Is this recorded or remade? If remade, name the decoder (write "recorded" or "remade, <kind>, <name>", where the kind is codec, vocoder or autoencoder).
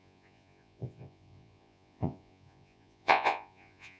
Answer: remade, vocoder, Vocos